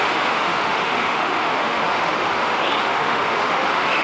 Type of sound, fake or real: fake